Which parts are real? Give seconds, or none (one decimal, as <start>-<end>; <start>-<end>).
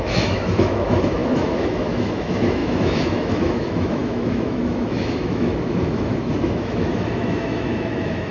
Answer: none